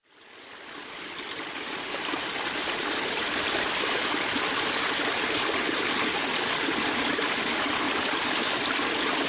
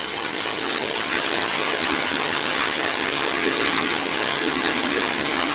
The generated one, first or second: second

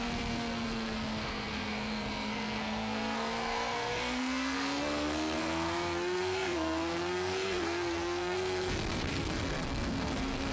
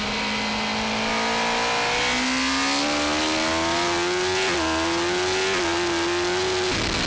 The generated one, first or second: first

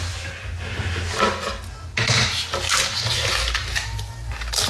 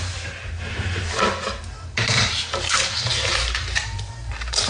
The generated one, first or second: second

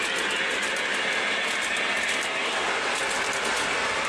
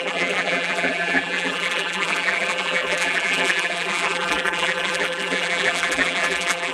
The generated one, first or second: second